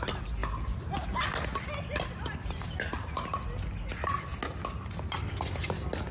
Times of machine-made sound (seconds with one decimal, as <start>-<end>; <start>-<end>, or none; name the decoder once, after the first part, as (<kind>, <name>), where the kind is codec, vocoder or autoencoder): none